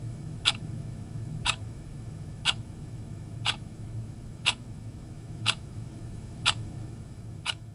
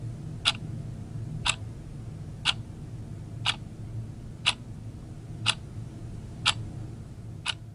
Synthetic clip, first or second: first